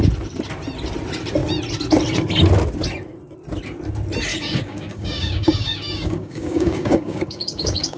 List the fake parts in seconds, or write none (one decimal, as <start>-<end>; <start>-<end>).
4.3-8.0